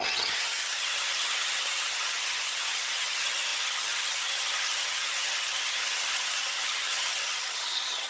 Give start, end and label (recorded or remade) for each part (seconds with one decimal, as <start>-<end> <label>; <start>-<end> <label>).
0.0-8.1 remade